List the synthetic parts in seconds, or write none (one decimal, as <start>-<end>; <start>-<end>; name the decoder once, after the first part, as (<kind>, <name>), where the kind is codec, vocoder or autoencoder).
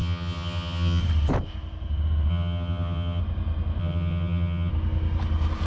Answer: 0.0-1.0 (vocoder, HiFi-GAN); 2.3-3.2; 3.8-4.7